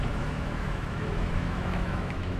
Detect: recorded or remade remade